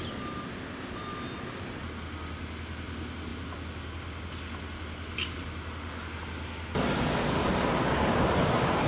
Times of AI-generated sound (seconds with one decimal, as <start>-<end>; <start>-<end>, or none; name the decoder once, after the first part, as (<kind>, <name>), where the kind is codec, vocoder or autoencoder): none